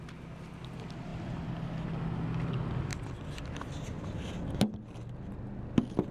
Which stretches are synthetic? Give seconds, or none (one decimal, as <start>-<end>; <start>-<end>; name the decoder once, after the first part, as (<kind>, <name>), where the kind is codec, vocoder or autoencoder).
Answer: none